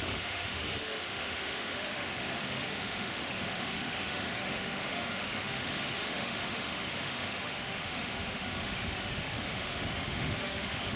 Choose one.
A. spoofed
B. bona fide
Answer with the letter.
A